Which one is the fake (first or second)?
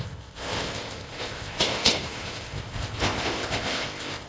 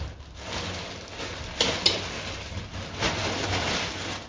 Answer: first